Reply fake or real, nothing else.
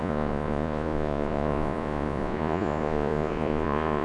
fake